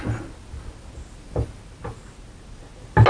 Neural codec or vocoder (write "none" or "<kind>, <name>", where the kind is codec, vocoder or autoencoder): none